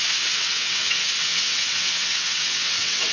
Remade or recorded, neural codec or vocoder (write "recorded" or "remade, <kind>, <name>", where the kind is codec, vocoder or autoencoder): remade, vocoder, WaveNeXt